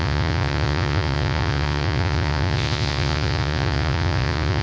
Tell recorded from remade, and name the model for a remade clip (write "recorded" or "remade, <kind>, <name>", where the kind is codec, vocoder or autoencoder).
remade, vocoder, Vocos